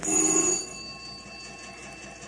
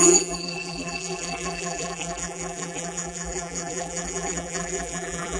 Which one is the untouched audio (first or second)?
first